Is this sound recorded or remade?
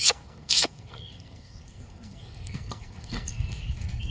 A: remade